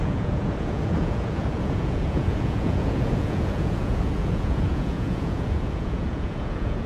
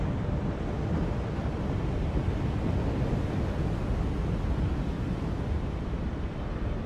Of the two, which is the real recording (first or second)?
second